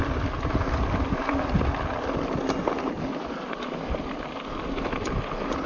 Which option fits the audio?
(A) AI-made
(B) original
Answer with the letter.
B